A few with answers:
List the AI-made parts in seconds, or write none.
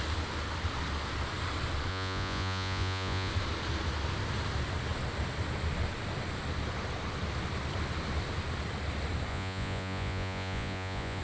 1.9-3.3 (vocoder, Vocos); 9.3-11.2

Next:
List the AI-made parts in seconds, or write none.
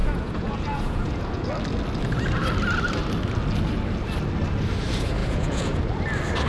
0.0-1.5 (vocoder, Vocos); 5.2-5.8